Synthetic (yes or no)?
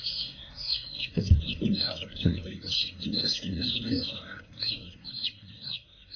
yes